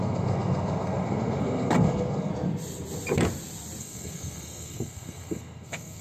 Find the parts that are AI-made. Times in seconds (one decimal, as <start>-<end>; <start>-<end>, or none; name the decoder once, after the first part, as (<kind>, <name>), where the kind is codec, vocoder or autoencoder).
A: 0.0-2.3 (codec, SNAC); 3.8-6.0